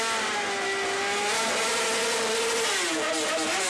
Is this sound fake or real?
real